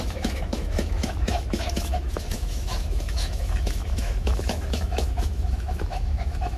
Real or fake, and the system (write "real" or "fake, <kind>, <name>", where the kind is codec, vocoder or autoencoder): fake, autoencoder, DAC-VAE